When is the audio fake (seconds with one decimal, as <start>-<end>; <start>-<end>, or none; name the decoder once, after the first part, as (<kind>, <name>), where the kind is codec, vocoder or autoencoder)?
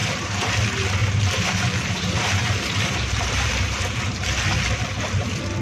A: 0.0-0.5 (vocoder, BigVGAN v2); 1.0-4.4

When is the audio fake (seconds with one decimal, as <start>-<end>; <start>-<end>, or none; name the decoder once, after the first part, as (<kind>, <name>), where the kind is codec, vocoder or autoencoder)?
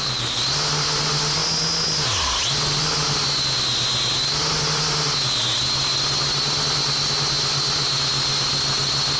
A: none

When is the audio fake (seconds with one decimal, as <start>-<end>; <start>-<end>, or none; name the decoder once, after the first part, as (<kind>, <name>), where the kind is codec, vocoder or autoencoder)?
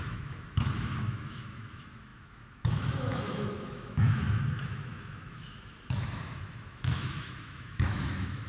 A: 0.0-8.5 (autoencoder, DAC-VAE)